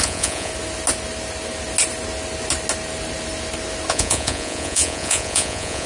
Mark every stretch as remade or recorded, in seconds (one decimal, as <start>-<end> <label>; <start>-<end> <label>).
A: 0.0-0.5 remade; 0.5-3.9 recorded; 3.9-5.9 remade